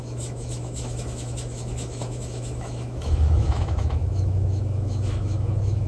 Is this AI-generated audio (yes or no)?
yes